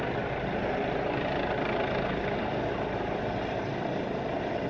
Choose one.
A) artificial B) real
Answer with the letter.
B